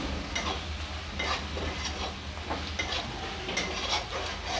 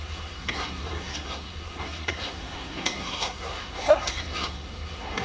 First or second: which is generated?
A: second